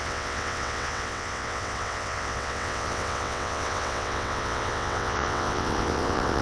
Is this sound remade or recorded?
remade